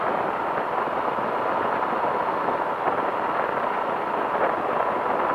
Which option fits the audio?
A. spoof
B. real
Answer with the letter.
B